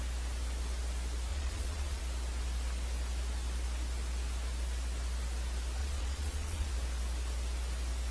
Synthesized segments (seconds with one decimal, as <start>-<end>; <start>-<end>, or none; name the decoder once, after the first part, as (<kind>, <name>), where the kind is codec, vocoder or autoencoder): 1.3-2.0 (vocoder, Vocos); 5.8-6.7